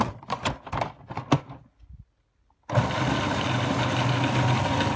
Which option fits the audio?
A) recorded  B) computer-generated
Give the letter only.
A